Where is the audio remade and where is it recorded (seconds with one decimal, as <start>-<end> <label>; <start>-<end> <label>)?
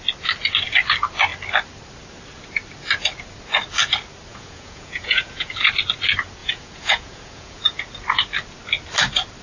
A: 0.0-4.3 recorded; 4.3-5.7 remade; 5.7-6.4 recorded; 6.4-7.8 remade; 7.8-9.4 recorded